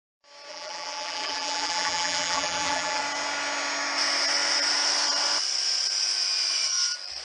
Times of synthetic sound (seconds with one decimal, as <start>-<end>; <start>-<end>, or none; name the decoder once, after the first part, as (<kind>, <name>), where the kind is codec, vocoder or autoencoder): 0.5-3.0 (vocoder, BigVGAN v2)